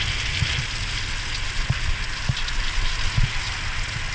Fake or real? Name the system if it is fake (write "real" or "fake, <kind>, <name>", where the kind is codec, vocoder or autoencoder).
real